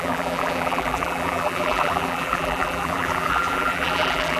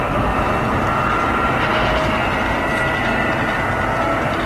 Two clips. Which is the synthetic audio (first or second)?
first